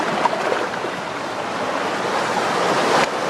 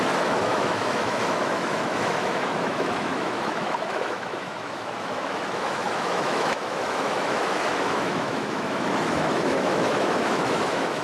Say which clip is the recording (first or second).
first